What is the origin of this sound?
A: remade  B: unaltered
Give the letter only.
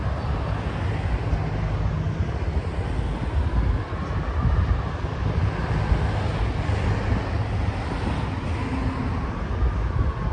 B